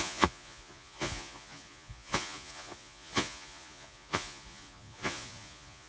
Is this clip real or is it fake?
fake